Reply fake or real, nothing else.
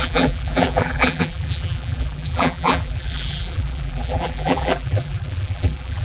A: fake